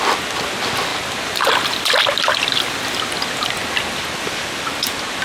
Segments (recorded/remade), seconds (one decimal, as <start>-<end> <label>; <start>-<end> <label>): 0.0-5.2 recorded